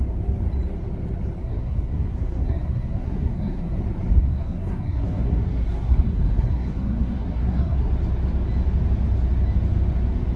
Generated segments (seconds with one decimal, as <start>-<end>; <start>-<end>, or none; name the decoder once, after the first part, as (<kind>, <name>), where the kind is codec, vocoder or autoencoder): 1.4-3.8 (codec, SNAC); 4.2-7.9